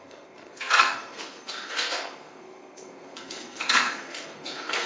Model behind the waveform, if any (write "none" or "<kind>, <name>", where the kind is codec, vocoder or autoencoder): codec, SNAC